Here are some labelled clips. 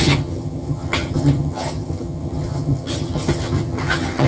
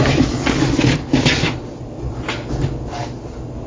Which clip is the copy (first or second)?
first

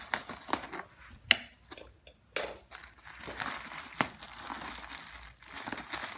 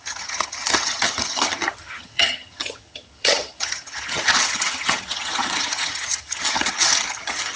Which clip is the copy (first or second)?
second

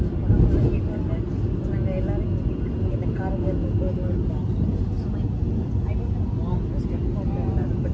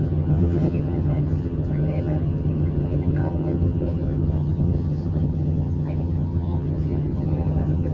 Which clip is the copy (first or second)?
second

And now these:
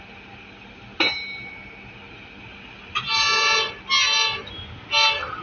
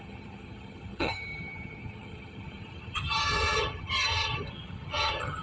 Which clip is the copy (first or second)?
second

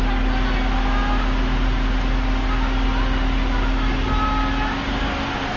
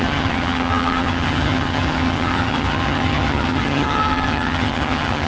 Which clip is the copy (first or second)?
second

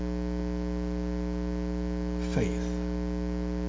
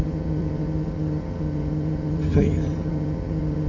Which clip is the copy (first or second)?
second